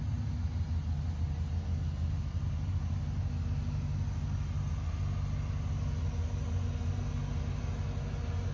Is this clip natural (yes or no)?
yes